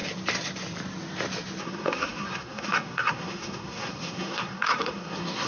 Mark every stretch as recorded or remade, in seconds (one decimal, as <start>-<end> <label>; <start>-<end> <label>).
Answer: 0.0-1.6 recorded; 1.6-5.5 remade